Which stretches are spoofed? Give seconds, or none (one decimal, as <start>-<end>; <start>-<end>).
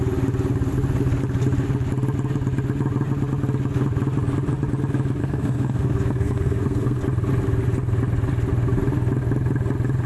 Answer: 5.2-7.0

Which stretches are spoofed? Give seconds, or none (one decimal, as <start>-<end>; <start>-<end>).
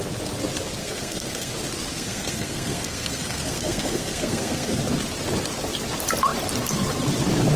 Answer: 0.8-1.5; 1.9-4.8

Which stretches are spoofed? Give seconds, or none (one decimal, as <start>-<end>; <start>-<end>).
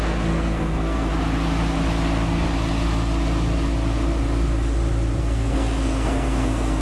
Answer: 0.0-1.1; 5.2-6.8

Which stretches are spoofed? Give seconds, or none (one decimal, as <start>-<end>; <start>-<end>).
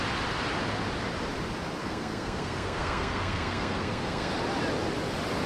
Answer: 1.8-4.3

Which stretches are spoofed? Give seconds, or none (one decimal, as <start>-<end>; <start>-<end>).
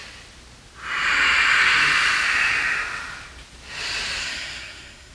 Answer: 4.2-5.1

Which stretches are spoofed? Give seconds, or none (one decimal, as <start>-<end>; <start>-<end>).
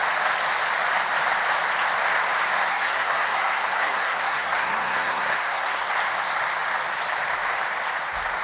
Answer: 2.7-5.9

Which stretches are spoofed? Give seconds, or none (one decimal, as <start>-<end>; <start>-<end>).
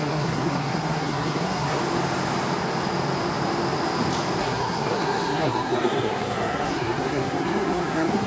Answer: 0.0-1.8; 4.4-8.3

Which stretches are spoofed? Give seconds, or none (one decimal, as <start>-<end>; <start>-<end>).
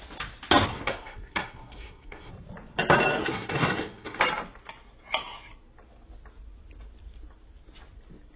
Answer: 0.7-2.3; 3.2-4.2